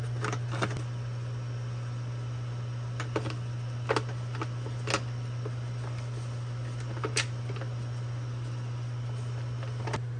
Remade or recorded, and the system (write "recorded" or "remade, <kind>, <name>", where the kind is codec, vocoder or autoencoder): recorded